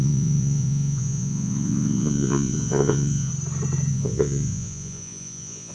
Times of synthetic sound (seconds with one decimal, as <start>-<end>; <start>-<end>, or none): 0.0-3.3; 3.9-5.7